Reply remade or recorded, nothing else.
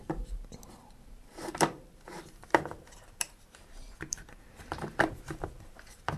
remade